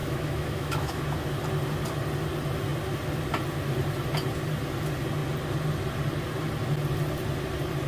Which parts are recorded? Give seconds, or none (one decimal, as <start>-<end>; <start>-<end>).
1.0-7.9